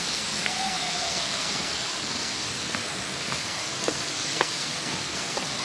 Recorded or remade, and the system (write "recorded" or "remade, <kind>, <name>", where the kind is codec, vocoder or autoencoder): remade, codec, SNAC